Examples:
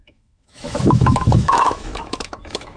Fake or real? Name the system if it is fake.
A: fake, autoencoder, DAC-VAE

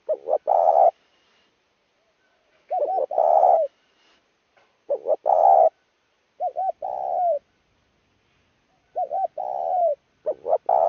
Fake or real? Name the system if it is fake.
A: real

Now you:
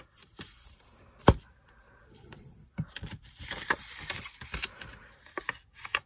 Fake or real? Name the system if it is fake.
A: fake, vocoder, BigVGAN v2